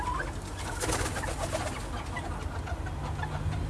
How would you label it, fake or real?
real